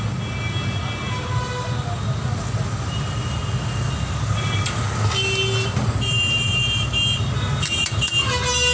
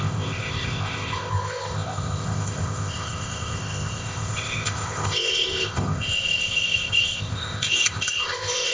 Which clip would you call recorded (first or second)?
first